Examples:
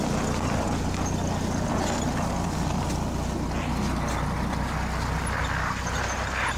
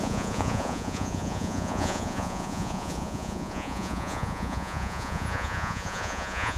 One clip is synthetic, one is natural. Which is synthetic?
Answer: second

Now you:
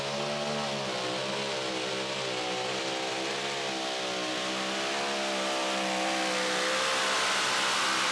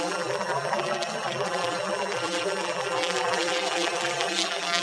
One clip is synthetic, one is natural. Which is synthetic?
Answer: second